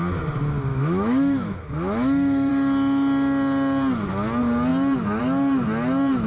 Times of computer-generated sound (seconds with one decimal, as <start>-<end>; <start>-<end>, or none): 0.7-2.5